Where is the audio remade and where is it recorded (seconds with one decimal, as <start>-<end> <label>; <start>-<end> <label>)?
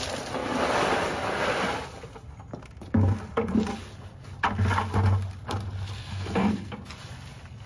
0.0-6.0 recorded; 6.0-6.7 remade; 6.7-7.7 recorded